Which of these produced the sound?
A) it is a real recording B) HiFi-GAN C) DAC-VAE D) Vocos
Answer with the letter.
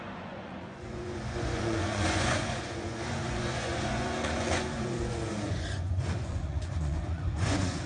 D